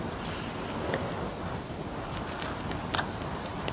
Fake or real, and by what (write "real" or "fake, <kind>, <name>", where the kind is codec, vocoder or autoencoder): real